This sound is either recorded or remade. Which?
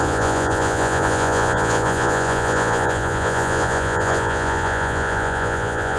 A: remade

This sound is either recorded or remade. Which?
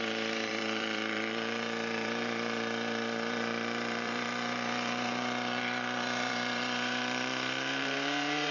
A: remade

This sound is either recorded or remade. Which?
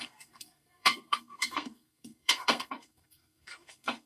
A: remade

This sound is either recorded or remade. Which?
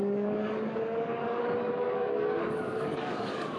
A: remade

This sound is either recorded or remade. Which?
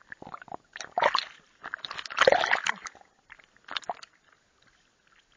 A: recorded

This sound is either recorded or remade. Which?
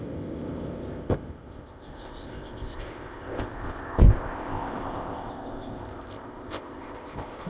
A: remade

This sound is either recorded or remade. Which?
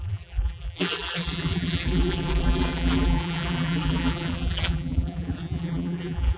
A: remade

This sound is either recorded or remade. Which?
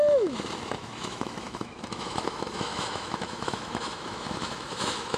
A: remade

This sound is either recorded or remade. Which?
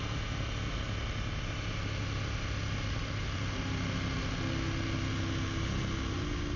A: recorded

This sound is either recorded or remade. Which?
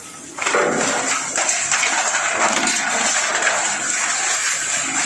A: recorded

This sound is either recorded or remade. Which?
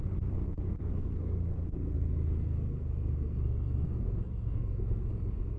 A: remade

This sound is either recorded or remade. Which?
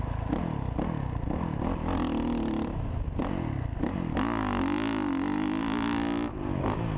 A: recorded